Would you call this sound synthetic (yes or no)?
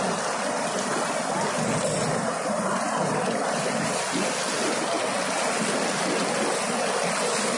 no